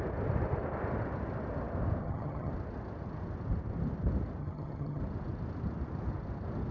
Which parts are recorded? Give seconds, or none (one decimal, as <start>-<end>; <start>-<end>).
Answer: 0.0-2.0; 2.5-4.4; 5.0-6.7